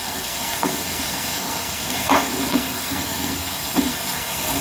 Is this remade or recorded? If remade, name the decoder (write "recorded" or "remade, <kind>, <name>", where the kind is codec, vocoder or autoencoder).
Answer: remade, codec, SNAC